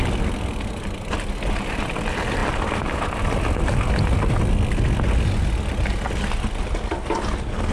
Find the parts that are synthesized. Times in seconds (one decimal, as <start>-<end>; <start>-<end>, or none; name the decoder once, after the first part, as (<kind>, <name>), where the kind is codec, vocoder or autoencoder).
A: none